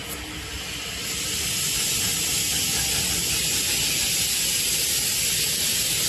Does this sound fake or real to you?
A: real